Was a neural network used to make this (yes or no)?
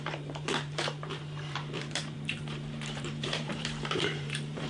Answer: yes